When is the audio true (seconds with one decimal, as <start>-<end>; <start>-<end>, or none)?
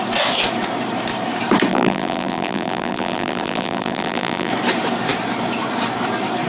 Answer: 0.0-1.7; 4.5-6.5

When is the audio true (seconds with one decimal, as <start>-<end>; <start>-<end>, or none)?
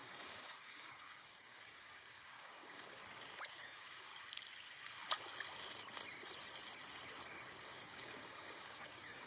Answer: 3.0-3.5; 4.1-7.6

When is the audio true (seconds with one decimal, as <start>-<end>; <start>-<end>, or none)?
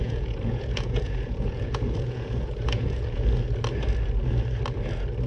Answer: 3.2-5.3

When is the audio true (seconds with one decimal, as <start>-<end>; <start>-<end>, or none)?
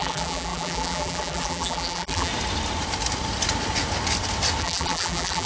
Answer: 2.3-4.6